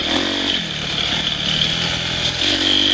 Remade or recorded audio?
recorded